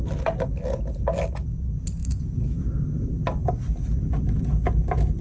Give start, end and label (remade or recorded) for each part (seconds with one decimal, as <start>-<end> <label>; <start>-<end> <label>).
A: 0.0-2.0 recorded; 2.0-2.6 remade; 2.6-5.2 recorded